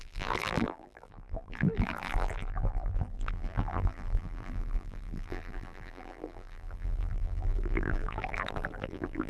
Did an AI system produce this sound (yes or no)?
yes